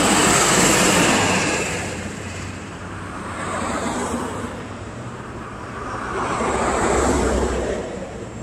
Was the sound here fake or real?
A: fake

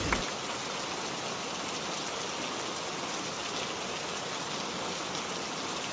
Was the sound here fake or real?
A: real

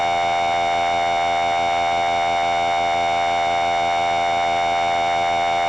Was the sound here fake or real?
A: real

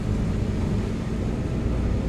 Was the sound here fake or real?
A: real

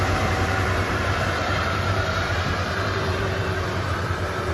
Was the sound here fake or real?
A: fake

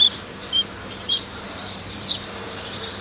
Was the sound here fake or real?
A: fake